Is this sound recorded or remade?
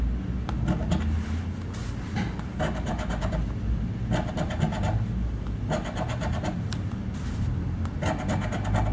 recorded